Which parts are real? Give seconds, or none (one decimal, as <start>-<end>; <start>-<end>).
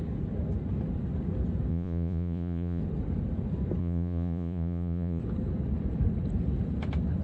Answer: 0.0-1.7; 2.8-3.8; 5.2-7.2